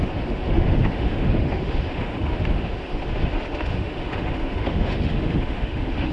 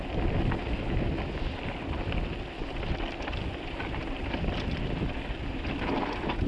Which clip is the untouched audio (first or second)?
second